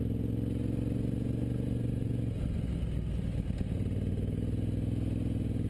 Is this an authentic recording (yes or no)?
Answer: yes